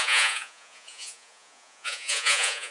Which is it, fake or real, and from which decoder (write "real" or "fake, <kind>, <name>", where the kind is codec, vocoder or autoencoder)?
fake, vocoder, Vocos